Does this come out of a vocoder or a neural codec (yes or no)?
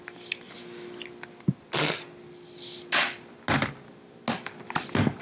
no